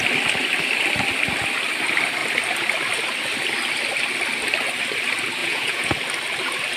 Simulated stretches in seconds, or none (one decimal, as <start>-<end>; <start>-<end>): 5.4-5.9